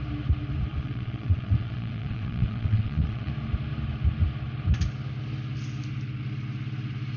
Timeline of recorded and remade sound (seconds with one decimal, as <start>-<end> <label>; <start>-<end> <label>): 0.0-0.7 recorded; 0.7-3.3 remade; 3.3-7.2 recorded